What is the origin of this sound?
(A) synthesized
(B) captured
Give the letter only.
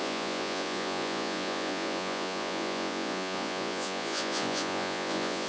A